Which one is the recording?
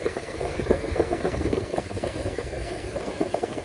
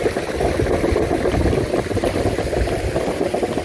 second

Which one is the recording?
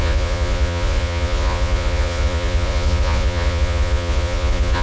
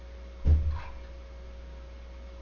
second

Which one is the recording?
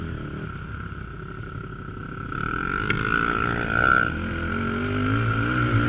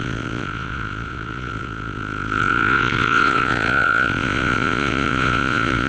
first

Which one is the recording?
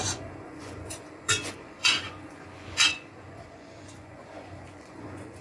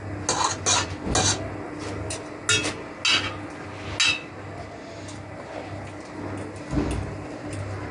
second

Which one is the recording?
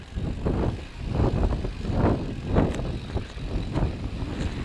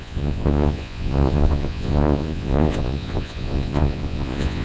first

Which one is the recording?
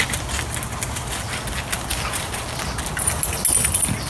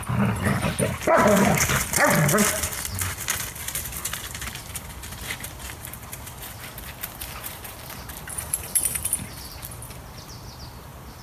first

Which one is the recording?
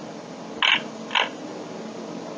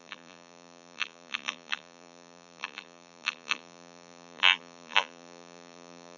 first